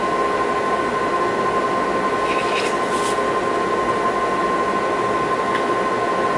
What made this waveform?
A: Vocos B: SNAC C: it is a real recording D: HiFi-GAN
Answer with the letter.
C